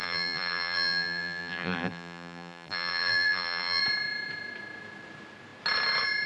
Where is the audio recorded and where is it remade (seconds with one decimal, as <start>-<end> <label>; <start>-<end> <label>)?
0.0-3.8 remade; 3.8-6.3 recorded